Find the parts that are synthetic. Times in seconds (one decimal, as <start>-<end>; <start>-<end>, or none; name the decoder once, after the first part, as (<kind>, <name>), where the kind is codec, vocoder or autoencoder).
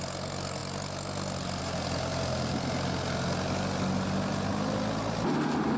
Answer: none